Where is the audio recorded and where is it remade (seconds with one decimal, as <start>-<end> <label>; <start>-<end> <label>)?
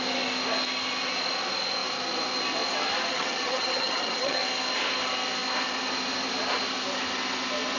0.0-3.1 recorded; 3.1-4.4 remade; 4.4-7.8 recorded